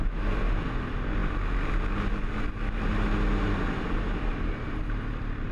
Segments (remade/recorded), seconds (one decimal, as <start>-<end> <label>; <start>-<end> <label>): 0.0-5.5 recorded